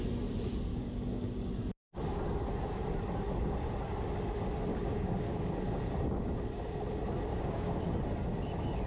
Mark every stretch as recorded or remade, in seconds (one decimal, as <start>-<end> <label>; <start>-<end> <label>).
0.0-0.7 recorded; 0.7-1.5 remade; 1.5-4.7 recorded; 4.7-5.8 remade; 5.8-7.3 recorded; 7.3-7.8 remade; 7.8-8.9 recorded